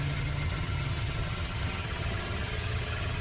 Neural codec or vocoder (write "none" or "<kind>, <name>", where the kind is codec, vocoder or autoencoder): vocoder, HiFi-GAN